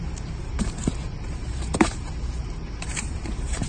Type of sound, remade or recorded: remade